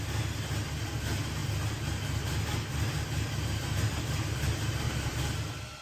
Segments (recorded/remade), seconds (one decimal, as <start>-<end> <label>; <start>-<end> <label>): 0.0-5.8 recorded